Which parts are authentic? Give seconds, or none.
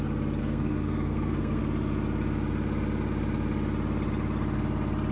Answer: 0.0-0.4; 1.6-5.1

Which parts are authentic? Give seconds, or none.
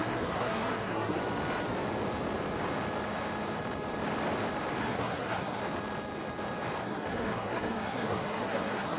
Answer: 1.2-4.8; 5.6-6.8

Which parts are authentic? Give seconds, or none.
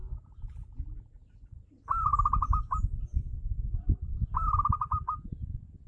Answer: 0.0-5.9